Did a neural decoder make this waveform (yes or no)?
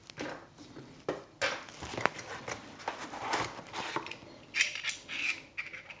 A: no